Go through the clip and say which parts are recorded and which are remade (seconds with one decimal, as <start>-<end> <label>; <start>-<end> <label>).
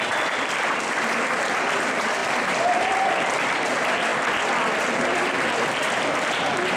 0.0-4.1 remade; 4.1-5.0 recorded; 5.0-6.8 remade